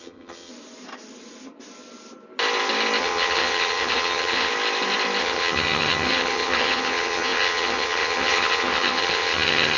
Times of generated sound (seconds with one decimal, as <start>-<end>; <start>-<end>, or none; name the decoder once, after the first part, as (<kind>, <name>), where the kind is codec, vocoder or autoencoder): 0.0-0.5 (vocoder, HiFi-GAN); 3.0-4.5; 5.2-9.8